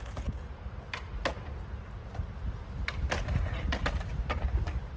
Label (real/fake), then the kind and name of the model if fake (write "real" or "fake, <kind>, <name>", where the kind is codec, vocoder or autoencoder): real